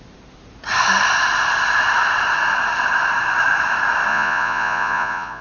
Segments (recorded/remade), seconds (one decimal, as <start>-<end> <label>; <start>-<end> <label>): 0.0-4.1 recorded; 4.1-5.4 remade